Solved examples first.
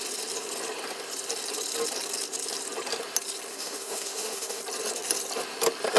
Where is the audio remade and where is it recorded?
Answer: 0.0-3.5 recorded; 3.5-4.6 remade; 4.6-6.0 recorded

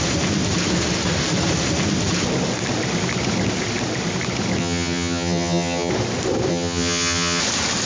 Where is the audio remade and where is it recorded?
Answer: 0.0-4.6 recorded; 4.6-5.9 remade; 5.9-6.5 recorded; 6.5-7.4 remade; 7.4-7.9 recorded